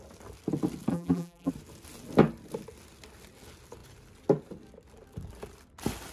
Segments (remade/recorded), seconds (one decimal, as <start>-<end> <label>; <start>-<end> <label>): 0.0-0.9 recorded; 0.9-1.5 remade; 1.5-6.1 recorded